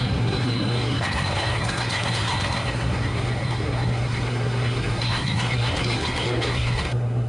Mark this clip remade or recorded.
remade